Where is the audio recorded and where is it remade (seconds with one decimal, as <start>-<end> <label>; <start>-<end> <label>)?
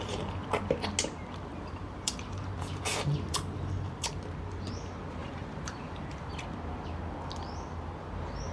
0.0-1.5 recorded; 1.5-4.1 remade; 4.1-5.2 recorded; 5.2-6.3 remade; 6.3-8.5 recorded